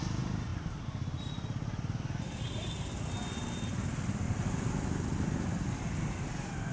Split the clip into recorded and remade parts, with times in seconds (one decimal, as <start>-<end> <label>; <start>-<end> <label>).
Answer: 0.0-0.5 recorded; 0.5-3.0 remade; 3.0-3.7 recorded; 3.7-4.3 remade; 4.3-6.7 recorded